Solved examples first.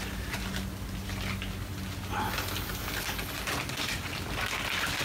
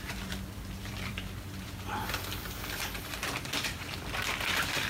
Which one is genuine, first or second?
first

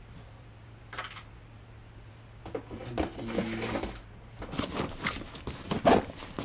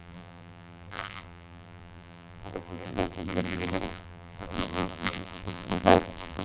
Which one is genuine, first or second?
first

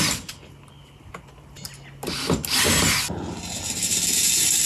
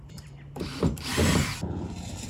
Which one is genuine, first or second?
first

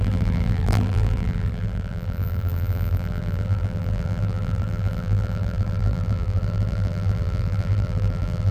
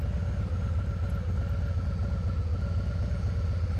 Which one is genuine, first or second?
second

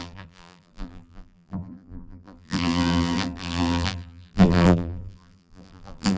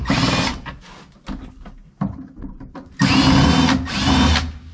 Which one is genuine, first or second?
second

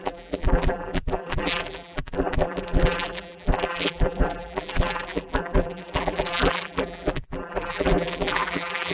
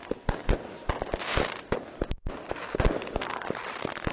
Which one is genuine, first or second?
second